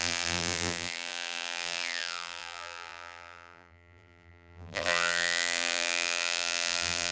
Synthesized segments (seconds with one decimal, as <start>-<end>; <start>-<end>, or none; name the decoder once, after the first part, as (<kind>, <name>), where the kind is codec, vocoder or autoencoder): 0.0-7.1 (vocoder, BigVGAN v2)